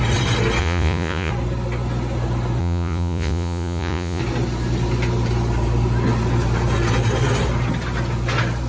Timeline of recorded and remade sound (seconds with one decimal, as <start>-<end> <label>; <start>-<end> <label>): 0.0-0.6 recorded; 0.6-1.3 remade; 1.3-2.6 recorded; 2.6-4.2 remade; 4.2-8.7 recorded